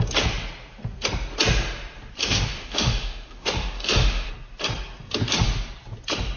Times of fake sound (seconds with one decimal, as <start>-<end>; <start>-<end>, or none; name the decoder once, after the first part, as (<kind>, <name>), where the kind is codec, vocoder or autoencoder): 2.2-4.3 (autoencoder, DAC-VAE)